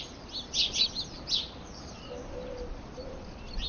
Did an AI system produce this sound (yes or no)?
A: no